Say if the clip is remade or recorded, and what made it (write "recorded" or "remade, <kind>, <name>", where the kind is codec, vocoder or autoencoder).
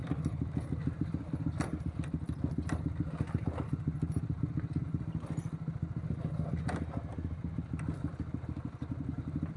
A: recorded